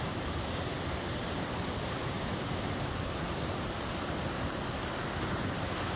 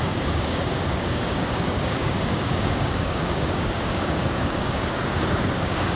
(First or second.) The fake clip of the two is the second